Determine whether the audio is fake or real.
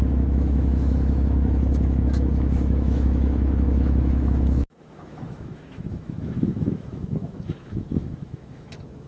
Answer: fake